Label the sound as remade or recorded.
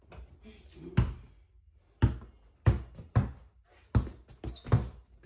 recorded